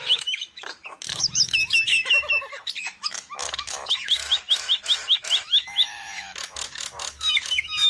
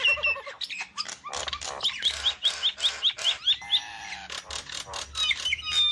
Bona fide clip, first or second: second